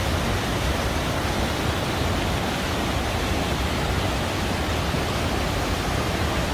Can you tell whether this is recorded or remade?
recorded